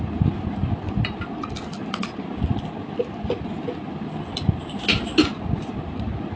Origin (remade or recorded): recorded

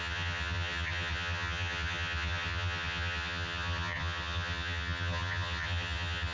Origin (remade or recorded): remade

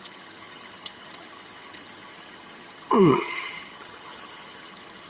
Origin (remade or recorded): remade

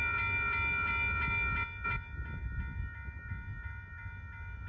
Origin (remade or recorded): recorded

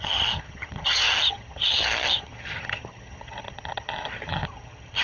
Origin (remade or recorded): remade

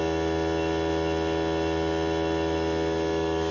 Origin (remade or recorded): recorded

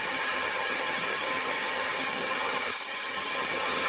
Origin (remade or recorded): remade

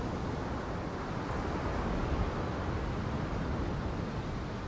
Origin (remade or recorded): recorded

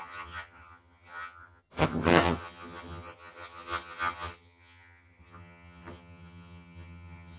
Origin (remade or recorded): remade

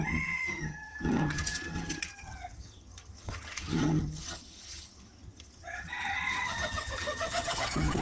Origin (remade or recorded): remade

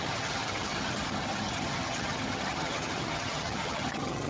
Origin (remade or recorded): remade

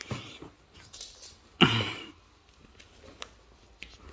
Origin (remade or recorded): recorded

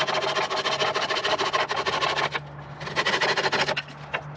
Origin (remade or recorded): recorded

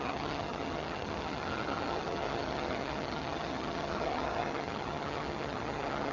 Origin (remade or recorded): remade